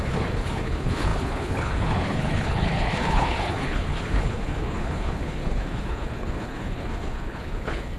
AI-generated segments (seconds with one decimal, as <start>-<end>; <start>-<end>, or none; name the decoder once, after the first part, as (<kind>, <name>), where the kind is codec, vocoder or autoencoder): 0.0-8.0 (codec, HILCodec)